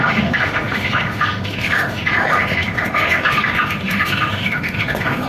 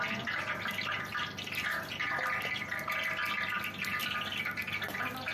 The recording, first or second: second